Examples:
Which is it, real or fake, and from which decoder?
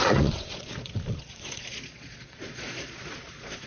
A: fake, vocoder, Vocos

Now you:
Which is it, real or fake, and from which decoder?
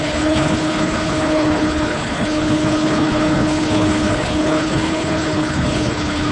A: fake, codec, HILCodec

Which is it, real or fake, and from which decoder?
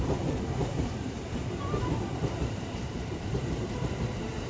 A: fake, vocoder, BigVGAN v2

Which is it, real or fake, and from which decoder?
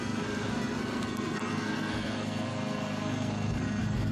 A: fake, codec, SNAC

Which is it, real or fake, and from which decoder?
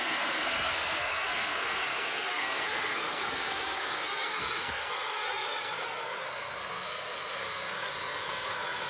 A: fake, codec, SNAC